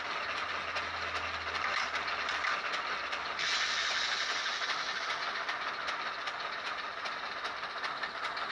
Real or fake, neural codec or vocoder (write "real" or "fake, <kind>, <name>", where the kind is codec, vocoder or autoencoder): real